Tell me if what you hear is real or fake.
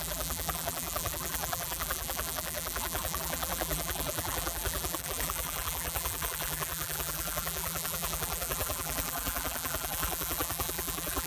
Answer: fake